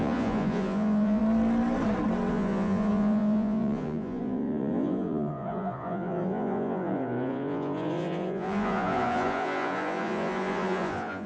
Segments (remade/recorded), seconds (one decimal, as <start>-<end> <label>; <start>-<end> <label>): 0.0-1.2 remade; 1.2-2.3 recorded; 2.3-11.3 remade